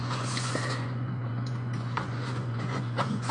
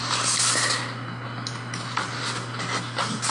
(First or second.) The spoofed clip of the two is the first